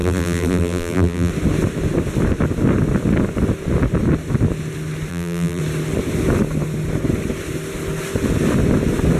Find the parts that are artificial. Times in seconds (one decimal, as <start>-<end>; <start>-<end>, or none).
0.0-1.3; 5.1-5.6